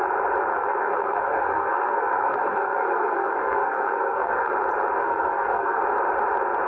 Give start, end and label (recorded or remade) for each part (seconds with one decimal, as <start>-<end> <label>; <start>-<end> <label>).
0.0-0.5 recorded; 0.5-4.5 remade; 4.5-5.0 recorded; 5.0-5.8 remade; 5.8-6.7 recorded